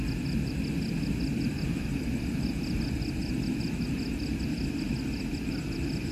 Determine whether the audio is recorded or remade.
recorded